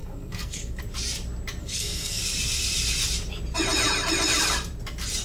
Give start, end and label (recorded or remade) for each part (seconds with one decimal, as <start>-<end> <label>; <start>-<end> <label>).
0.0-0.8 remade; 0.8-1.6 recorded; 1.6-2.2 remade; 2.2-5.2 recorded